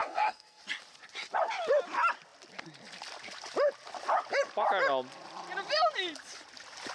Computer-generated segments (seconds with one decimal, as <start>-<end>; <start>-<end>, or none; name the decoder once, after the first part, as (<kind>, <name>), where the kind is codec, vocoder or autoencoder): 0.0-0.6 (codec, SNAC)